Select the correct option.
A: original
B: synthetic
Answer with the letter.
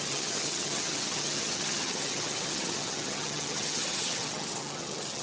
B